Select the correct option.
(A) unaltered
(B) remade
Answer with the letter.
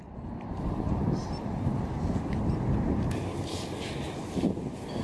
A